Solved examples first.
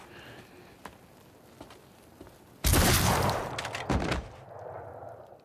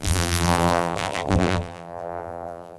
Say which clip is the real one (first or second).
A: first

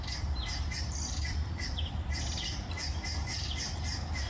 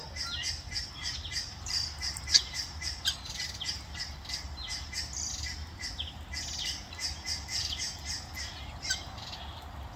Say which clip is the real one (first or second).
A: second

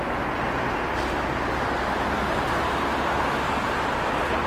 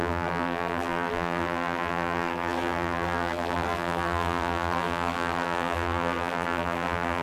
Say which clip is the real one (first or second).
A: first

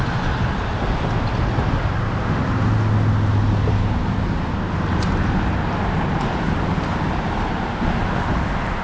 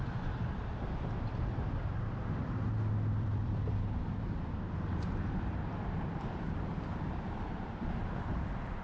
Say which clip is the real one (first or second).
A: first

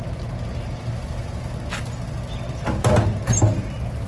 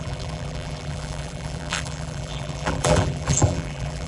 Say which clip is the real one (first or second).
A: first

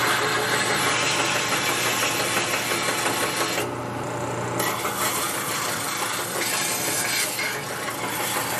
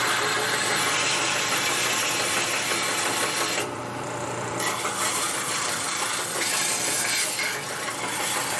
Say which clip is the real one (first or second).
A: first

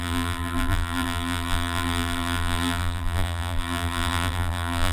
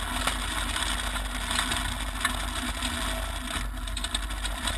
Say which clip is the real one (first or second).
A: second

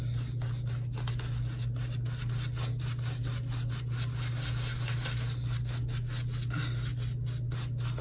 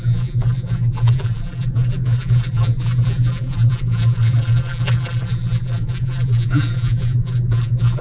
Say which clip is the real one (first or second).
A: first